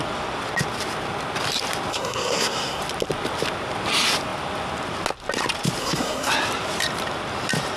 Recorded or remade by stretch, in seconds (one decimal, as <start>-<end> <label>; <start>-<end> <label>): 0.0-1.9 recorded; 1.9-2.8 remade; 2.8-5.8 recorded; 5.8-6.3 remade; 6.3-7.8 recorded

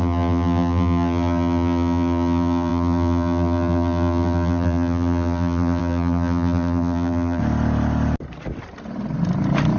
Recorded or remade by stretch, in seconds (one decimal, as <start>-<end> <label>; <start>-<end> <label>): 0.0-7.4 remade; 7.4-9.8 recorded